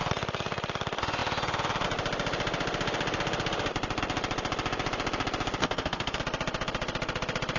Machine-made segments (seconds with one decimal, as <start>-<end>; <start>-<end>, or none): 5.6-6.2